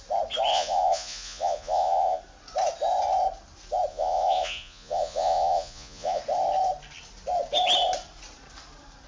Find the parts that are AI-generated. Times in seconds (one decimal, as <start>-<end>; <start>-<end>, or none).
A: 0.5-2.2; 3.9-6.2